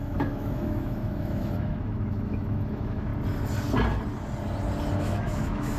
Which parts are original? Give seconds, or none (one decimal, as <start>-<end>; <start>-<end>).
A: 3.1-5.0